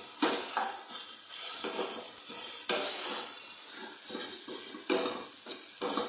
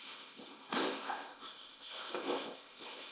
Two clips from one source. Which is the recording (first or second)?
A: first